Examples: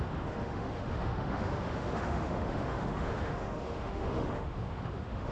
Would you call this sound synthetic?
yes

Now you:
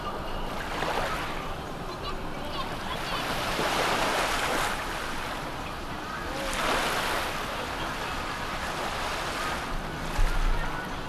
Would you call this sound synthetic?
no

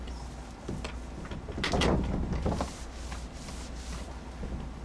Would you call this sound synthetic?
no